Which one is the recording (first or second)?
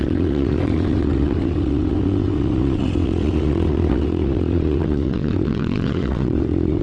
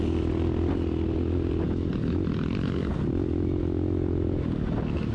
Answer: second